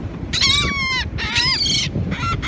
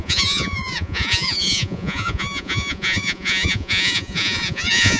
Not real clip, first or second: second